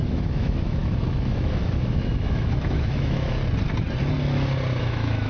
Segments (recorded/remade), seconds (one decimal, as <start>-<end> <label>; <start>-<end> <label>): 0.0-3.4 remade; 3.4-4.8 recorded; 4.8-5.3 remade